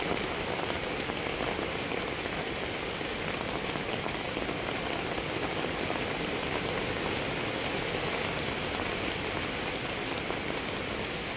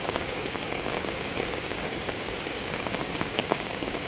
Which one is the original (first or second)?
first